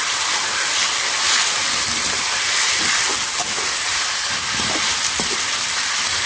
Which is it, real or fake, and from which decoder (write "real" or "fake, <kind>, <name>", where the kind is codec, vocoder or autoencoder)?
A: real